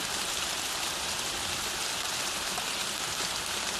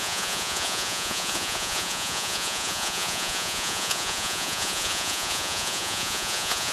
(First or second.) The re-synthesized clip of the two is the second